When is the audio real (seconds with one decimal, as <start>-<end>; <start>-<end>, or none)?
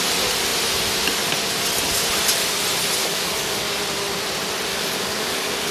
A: 0.0-3.0; 3.8-4.7